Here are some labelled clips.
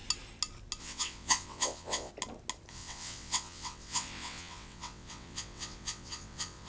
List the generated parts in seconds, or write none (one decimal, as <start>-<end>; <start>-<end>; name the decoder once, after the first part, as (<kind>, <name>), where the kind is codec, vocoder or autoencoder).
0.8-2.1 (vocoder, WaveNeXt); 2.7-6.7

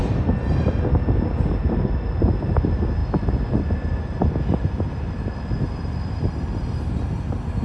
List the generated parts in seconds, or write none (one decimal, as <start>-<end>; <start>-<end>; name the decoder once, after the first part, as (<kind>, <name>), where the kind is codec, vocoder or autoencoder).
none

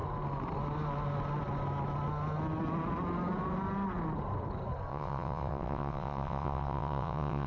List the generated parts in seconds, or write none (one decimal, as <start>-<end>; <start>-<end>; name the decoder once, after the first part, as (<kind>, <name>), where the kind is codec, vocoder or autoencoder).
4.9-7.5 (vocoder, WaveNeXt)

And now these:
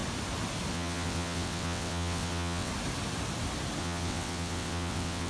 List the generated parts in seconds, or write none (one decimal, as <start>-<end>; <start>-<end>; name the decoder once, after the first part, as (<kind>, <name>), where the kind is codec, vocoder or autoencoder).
0.7-2.7 (vocoder, WaveNeXt); 3.8-5.3

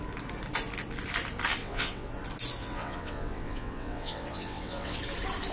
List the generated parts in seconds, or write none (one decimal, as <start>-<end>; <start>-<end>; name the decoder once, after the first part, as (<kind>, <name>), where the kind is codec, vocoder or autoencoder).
1.6-2.1 (vocoder, WaveNeXt); 2.6-5.0

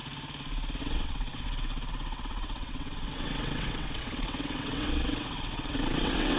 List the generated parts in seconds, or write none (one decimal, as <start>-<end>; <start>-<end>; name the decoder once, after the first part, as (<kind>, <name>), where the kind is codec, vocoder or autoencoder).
0.8-6.4 (vocoder, WaveNeXt)

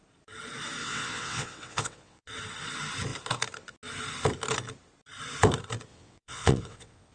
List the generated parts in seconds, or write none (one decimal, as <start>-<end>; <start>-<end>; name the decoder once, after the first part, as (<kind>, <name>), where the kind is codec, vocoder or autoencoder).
0.8-2.3 (vocoder, WaveNeXt); 5.9-7.1